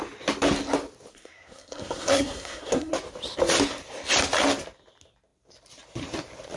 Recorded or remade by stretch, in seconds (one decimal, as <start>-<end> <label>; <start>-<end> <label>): 0.0-1.1 recorded; 1.1-2.9 remade; 2.9-6.6 recorded